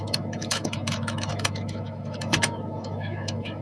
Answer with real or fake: fake